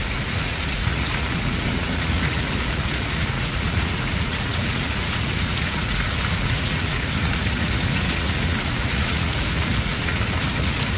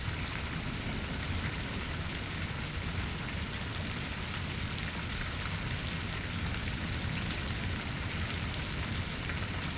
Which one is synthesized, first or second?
first